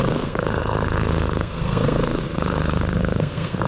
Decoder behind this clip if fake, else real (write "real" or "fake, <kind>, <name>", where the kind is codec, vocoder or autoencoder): fake, codec, SNAC